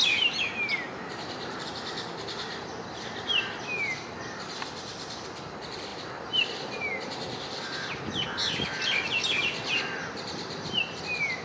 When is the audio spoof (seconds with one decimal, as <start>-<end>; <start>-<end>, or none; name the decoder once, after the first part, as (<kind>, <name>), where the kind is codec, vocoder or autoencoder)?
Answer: 0.0-1.7 (vocoder, BigVGAN v2)